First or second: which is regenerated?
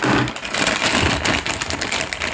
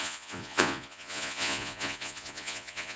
second